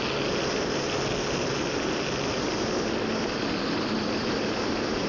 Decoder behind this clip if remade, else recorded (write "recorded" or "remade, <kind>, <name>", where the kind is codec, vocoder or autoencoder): recorded